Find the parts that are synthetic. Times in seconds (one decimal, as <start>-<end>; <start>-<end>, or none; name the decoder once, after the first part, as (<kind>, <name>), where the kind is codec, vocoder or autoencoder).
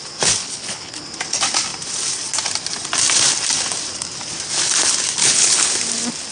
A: 0.4-1.0 (codec, HILCodec); 5.2-5.7